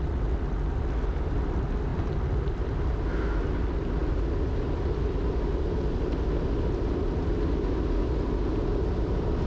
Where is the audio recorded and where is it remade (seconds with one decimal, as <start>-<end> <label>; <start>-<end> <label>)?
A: 0.0-9.5 recorded